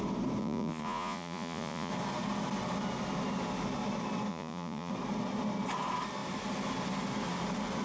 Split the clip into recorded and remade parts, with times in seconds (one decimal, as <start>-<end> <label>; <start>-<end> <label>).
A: 0.0-0.4 recorded; 0.4-1.9 remade; 1.9-4.3 recorded; 4.3-4.9 remade; 4.9-7.8 recorded